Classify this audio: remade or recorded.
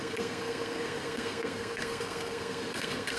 remade